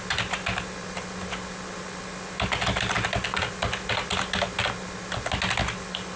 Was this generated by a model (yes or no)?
no